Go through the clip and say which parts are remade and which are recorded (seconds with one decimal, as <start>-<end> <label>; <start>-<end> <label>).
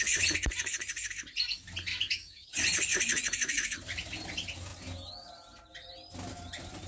0.0-1.9 recorded; 1.9-2.5 remade; 2.5-6.9 recorded